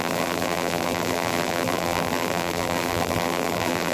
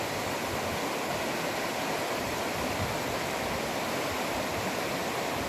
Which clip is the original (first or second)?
second